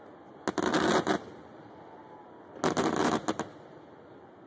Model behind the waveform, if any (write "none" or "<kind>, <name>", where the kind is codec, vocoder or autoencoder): none